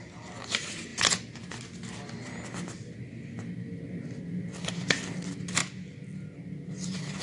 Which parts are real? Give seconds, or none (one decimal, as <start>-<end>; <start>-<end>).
0.0-7.2